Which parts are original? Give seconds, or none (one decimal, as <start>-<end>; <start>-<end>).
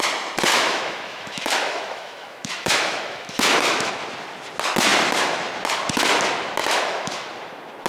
0.0-0.5; 3.9-6.6; 7.3-7.9